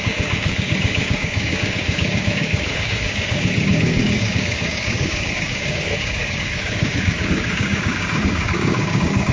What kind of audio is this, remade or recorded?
remade